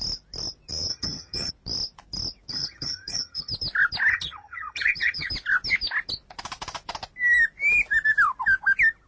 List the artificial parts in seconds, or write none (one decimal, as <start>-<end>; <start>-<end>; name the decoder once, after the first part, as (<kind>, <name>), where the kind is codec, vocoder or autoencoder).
0.9-1.5 (vocoder, HiFi-GAN); 2.5-3.5; 4.1-5.3